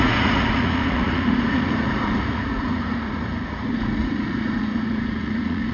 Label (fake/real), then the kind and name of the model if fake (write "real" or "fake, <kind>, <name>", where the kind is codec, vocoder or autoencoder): fake, vocoder, Vocos